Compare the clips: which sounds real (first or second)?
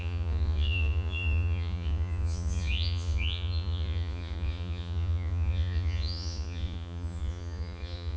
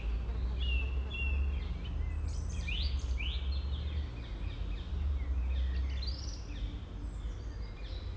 second